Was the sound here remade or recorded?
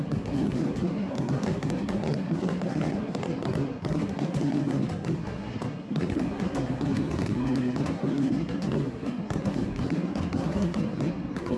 remade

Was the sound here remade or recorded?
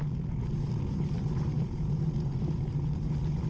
recorded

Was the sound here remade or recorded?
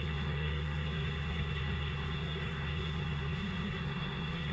remade